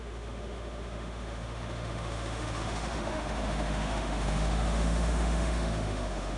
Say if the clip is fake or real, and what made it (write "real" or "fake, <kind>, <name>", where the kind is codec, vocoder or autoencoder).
fake, autoencoder, DAC-VAE